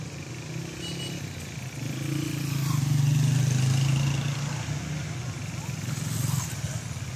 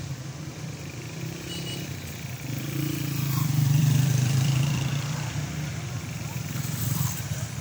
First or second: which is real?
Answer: first